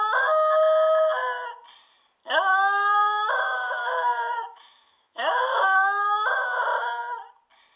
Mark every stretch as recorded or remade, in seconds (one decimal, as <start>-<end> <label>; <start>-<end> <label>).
0.0-2.2 recorded; 2.2-6.6 remade; 6.6-7.8 recorded